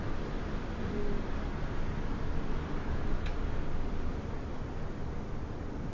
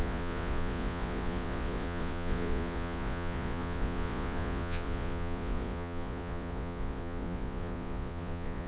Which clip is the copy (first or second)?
second